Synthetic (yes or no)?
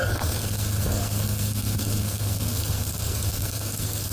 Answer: yes